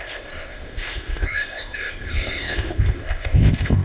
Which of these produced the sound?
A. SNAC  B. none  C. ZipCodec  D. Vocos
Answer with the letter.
C